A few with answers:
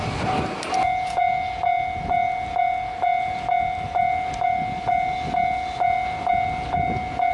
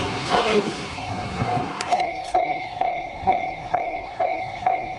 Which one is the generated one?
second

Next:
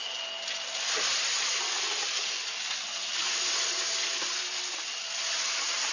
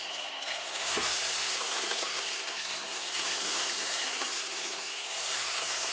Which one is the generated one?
second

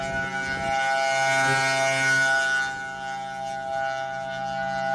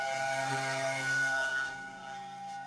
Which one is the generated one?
second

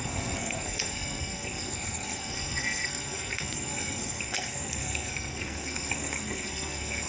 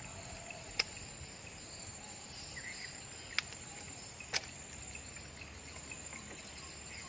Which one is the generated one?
first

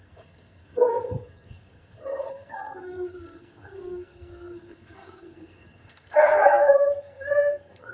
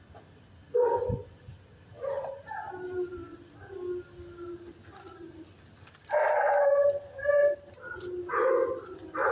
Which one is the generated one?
first